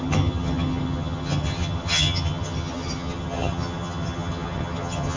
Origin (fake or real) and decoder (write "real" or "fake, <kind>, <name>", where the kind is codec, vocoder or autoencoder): fake, vocoder, HiFi-GAN